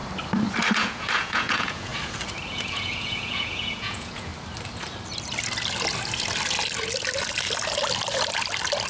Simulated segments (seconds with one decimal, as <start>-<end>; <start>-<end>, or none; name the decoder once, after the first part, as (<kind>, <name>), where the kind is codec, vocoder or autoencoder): 0.7-1.9 (vocoder, Vocos); 2.5-4.3